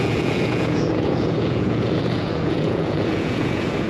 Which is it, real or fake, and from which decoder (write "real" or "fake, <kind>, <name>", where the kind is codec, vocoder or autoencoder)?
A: fake, vocoder, Vocos